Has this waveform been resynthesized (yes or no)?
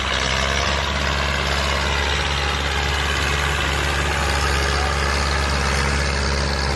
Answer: no